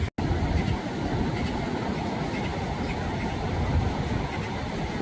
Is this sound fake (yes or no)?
no